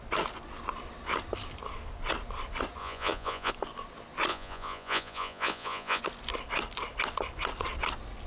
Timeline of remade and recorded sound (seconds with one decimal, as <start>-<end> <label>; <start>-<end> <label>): 0.0-2.8 recorded; 2.8-3.5 remade; 3.5-4.3 recorded; 4.3-6.0 remade; 6.0-8.3 recorded

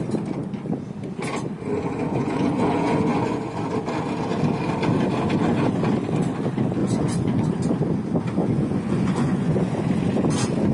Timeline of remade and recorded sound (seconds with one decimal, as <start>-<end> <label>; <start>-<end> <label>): 0.0-2.0 recorded; 2.0-3.6 remade; 3.6-6.8 recorded; 6.8-7.4 remade; 7.4-8.4 recorded; 8.4-9.8 remade; 9.8-10.7 recorded

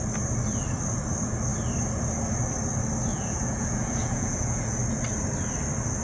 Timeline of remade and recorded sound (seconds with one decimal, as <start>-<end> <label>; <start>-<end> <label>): 0.0-3.1 recorded; 3.1-4.8 remade; 4.8-6.0 recorded

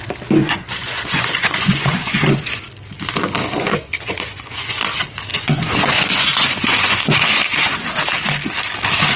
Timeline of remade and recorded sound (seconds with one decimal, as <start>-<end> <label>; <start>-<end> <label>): 0.0-0.4 recorded; 0.4-2.6 remade; 2.6-3.4 recorded; 3.4-4.8 remade; 4.8-5.3 recorded; 5.3-7.9 remade; 7.9-9.2 recorded